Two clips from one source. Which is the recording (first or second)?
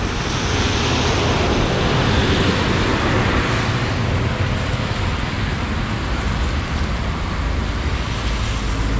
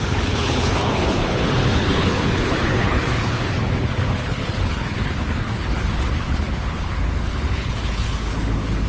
first